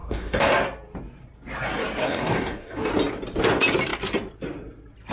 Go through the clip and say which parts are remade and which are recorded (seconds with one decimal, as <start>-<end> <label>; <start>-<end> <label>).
0.0-0.5 remade; 0.5-2.0 recorded; 2.0-2.9 remade; 2.9-5.1 recorded